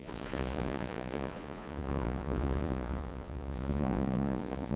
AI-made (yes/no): yes